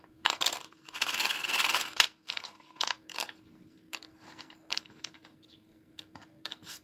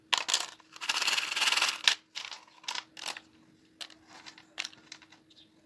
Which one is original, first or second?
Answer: second